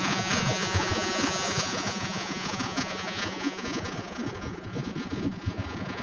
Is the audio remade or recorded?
remade